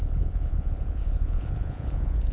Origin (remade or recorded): remade